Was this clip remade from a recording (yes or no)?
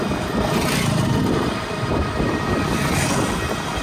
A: no